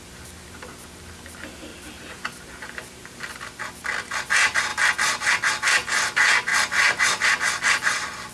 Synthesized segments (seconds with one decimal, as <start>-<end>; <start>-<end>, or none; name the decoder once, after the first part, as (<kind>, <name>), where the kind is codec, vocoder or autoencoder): 1.7-3.2 (vocoder, BigVGAN v2)